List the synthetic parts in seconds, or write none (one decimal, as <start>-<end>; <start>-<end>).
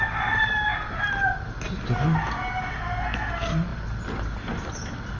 none